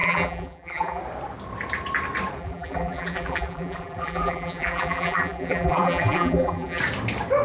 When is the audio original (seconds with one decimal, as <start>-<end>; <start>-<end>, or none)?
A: 1.0-2.4; 6.8-7.4